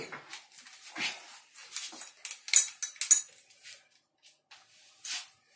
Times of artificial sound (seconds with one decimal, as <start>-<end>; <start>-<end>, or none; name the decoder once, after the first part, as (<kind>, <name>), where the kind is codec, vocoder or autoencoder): none